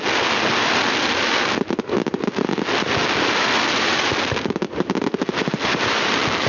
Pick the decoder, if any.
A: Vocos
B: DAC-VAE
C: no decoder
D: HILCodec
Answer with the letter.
C